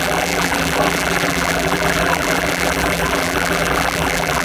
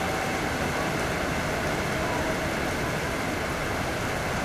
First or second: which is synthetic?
first